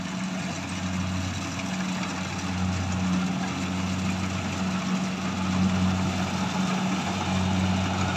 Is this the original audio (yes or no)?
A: yes